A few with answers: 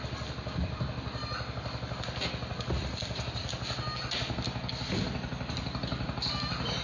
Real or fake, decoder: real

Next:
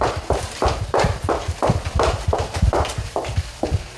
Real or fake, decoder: fake, vocoder, BigVGAN v2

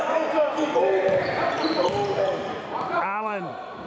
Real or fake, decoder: fake, vocoder, BigVGAN v2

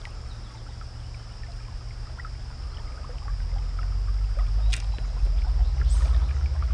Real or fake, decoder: real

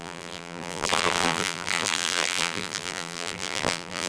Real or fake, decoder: fake, vocoder, BigVGAN v2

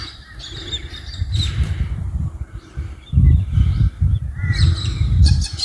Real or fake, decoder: fake, vocoder, BigVGAN v2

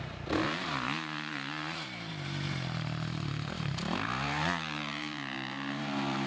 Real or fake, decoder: fake, vocoder, BigVGAN v2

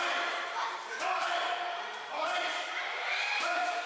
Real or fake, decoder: fake, vocoder, BigVGAN v2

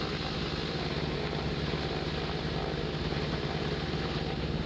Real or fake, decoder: fake, vocoder, BigVGAN v2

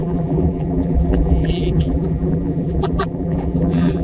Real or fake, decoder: fake, vocoder, BigVGAN v2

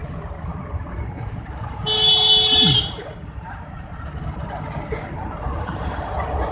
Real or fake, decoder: fake, vocoder, BigVGAN v2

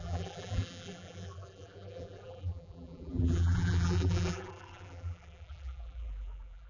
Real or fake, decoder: fake, vocoder, BigVGAN v2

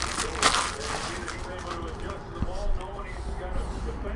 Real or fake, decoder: fake, vocoder, BigVGAN v2